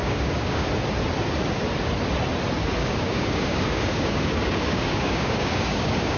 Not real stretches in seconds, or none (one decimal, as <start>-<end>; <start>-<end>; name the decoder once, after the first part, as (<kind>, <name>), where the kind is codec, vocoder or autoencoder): 0.0-0.7 (codec, DAC); 2.8-6.2